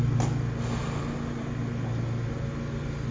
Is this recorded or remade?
recorded